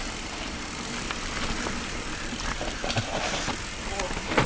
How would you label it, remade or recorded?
recorded